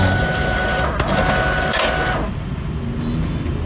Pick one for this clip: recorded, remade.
recorded